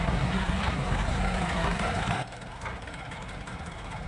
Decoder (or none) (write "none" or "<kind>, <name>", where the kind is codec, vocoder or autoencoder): codec, SNAC